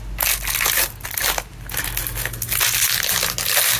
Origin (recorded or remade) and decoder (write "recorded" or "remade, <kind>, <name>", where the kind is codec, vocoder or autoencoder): recorded